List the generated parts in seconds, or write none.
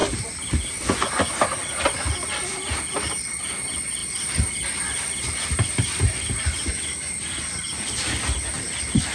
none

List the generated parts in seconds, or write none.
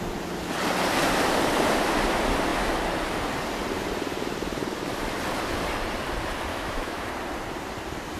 6.5-7.1 (autoencoder, DAC-VAE)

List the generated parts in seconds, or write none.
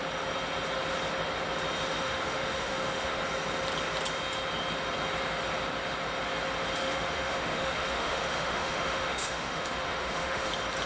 2.0-3.2 (autoencoder, DAC-VAE); 6.8-10.5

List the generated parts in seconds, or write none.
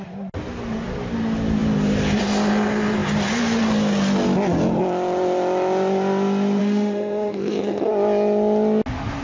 6.6-7.9 (autoencoder, DAC-VAE)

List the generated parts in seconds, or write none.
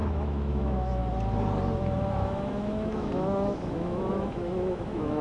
0.0-1.0 (autoencoder, DAC-VAE); 2.1-5.2